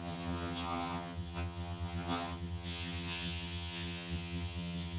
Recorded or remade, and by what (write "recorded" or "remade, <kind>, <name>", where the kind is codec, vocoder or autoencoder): remade, vocoder, HiFi-GAN